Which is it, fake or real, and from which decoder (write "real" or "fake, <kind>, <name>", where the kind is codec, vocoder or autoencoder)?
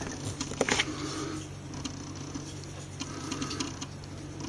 real